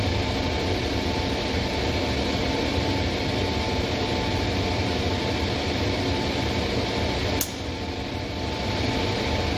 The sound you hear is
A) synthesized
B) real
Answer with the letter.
B